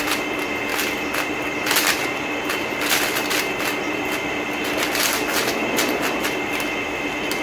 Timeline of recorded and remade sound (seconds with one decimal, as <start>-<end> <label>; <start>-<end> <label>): 0.0-7.4 recorded